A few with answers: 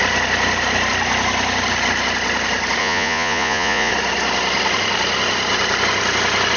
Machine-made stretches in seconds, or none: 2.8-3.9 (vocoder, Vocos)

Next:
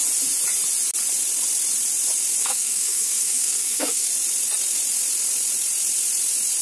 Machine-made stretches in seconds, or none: 2.4-4.1 (codec, SNAC)

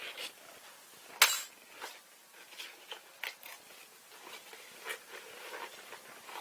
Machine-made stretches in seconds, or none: none

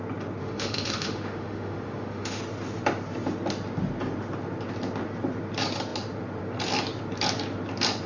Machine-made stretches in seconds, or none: 0.4-2.4 (autoencoder, DAC-VAE)